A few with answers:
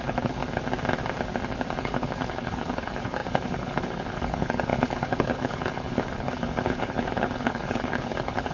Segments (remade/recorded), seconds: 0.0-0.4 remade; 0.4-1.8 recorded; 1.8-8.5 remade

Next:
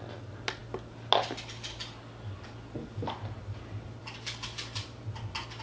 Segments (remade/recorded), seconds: 0.0-5.6 recorded

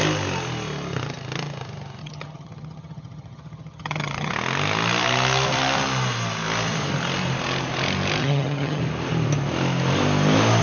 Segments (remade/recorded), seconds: 0.0-2.0 recorded; 2.0-4.3 remade; 4.3-8.2 recorded; 8.2-8.8 remade; 8.8-10.6 recorded

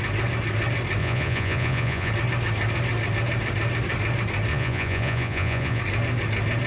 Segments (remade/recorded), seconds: 0.0-1.0 recorded; 1.0-2.1 remade; 2.1-4.5 recorded; 4.5-5.8 remade; 5.8-6.7 recorded

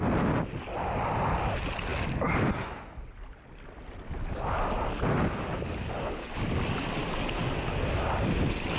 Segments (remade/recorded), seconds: 0.0-8.8 recorded

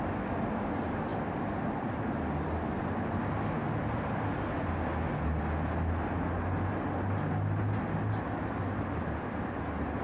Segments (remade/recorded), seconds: 0.0-10.0 recorded

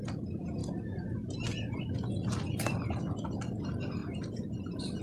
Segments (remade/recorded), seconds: 0.0-5.0 recorded